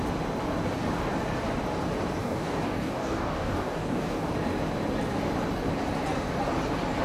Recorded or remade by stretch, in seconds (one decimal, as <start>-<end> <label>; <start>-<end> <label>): 0.0-2.2 recorded; 2.2-4.3 remade; 4.3-7.0 recorded